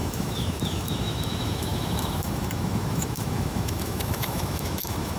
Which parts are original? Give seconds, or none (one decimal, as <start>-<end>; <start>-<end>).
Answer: none